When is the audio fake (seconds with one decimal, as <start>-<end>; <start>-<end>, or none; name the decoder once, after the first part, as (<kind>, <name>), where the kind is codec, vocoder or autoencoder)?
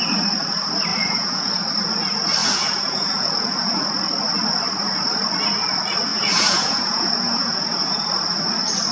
0.9-1.5 (vocoder, Vocos); 2.4-3.8; 6.1-8.1